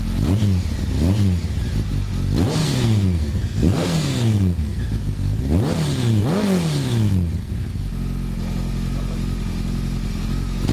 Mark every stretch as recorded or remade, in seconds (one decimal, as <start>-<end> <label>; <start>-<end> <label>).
0.0-2.6 recorded; 2.6-5.4 remade; 5.4-7.4 recorded; 7.4-7.9 remade; 7.9-10.7 recorded